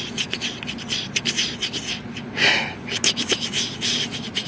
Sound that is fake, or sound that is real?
real